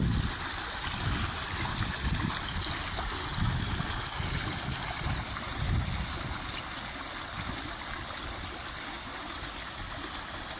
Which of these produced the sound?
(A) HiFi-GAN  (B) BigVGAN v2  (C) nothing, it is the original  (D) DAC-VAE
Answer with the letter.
C